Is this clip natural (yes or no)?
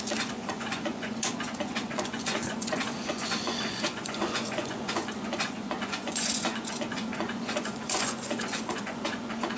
no